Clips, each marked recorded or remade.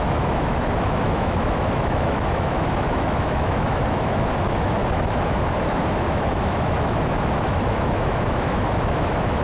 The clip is remade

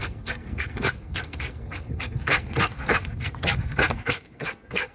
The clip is remade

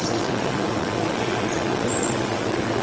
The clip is remade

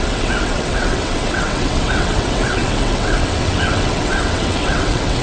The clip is remade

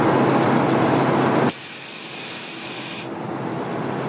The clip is recorded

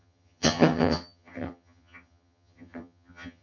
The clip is remade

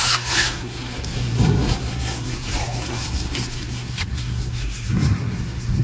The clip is remade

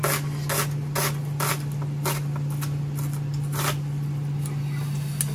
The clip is recorded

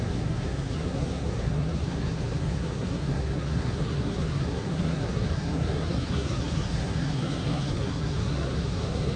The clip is remade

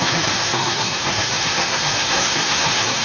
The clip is remade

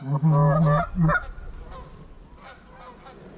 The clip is recorded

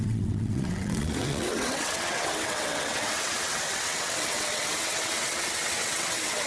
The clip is remade